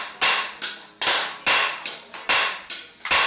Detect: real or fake real